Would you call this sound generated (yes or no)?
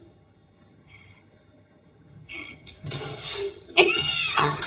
yes